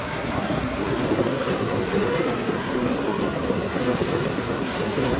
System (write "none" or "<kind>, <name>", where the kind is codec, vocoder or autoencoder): codec, SNAC